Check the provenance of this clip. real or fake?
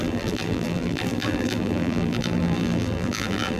fake